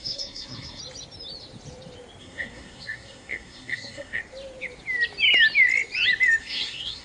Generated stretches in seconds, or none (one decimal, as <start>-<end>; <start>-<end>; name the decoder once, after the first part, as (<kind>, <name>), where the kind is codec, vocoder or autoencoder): 0.0-0.8 (codec, SNAC); 2.2-4.2; 6.4-7.0